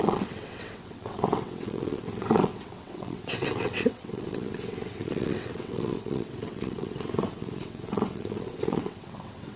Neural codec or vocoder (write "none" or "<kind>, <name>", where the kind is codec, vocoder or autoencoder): vocoder, WaveNeXt